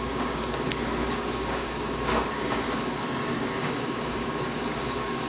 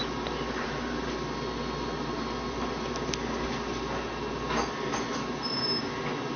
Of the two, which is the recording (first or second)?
second